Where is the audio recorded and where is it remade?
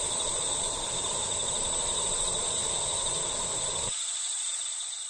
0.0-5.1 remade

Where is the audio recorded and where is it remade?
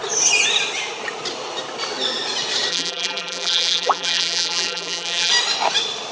0.0-2.7 recorded; 2.7-5.3 remade; 5.3-6.1 recorded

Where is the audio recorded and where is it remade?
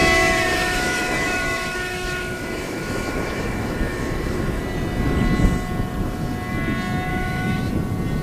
0.0-4.6 remade; 4.6-7.1 recorded; 7.1-7.7 remade; 7.7-8.2 recorded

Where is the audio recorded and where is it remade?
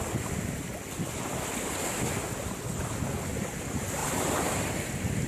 0.0-4.0 recorded; 4.0-4.6 remade; 4.6-5.3 recorded